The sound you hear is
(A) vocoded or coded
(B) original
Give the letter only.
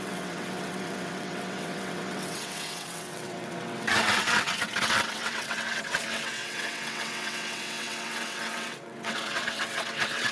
A